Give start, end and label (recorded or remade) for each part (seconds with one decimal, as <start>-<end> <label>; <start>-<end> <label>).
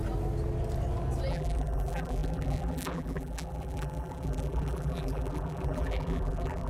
0.0-1.3 recorded; 1.3-6.7 remade